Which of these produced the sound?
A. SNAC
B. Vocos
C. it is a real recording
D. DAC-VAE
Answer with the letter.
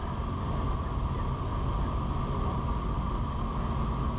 C